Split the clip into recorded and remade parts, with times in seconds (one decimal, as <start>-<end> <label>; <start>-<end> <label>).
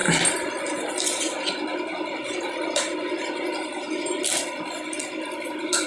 0.0-5.9 recorded